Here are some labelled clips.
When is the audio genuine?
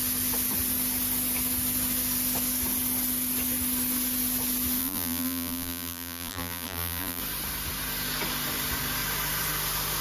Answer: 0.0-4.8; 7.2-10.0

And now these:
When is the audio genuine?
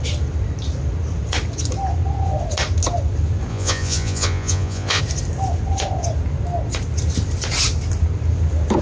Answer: 0.0-3.5; 5.0-8.8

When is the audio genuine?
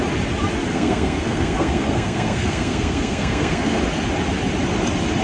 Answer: 0.0-0.7; 3.8-5.2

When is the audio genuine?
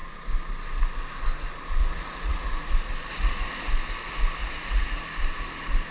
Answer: 0.0-1.8; 2.7-3.1; 3.7-4.4; 5.0-5.9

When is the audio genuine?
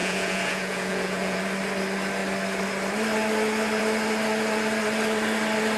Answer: 1.4-5.8